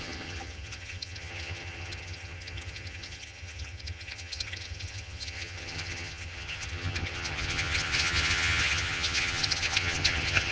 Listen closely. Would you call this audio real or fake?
fake